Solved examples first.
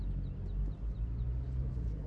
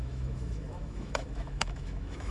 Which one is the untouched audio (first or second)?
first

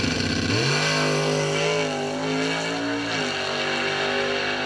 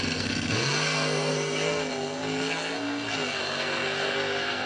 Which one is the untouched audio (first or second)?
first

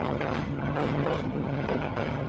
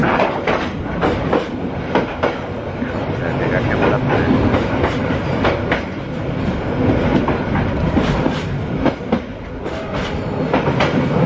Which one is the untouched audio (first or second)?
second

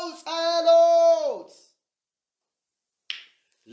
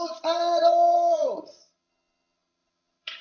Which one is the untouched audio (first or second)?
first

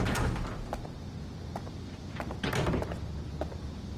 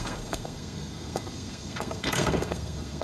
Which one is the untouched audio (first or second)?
first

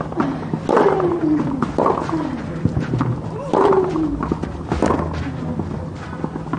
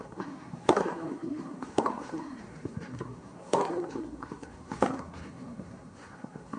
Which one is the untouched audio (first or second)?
first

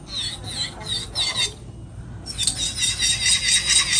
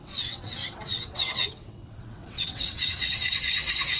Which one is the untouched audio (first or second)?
first